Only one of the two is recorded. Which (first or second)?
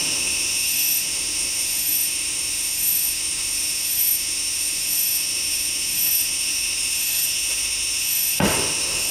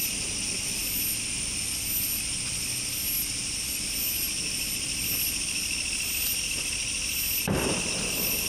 second